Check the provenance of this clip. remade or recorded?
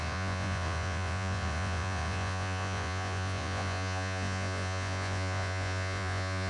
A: remade